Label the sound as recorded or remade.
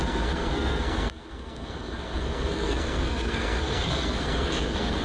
remade